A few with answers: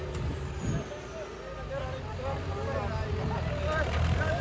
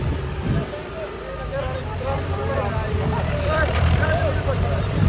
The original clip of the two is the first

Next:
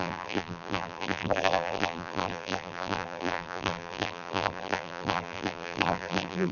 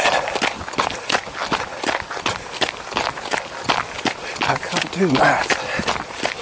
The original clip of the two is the second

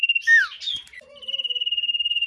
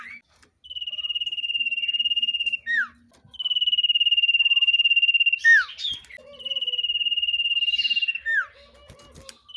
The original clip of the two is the second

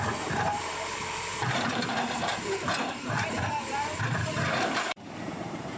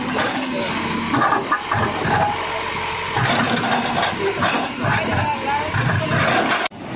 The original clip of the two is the second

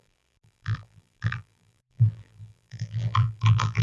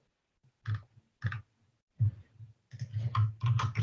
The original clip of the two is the second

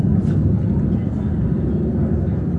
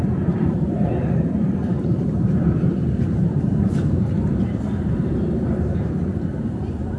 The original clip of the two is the first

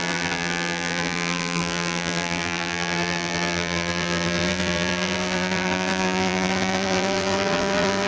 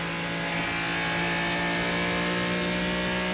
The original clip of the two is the second